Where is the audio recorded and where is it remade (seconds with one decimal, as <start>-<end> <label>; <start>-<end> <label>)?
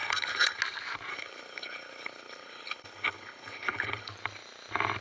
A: 0.0-0.6 remade; 0.6-1.1 recorded; 1.1-4.1 remade; 4.1-5.0 recorded